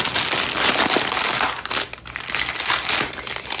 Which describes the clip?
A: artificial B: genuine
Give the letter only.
B